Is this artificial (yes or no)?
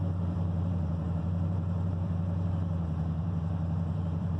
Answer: yes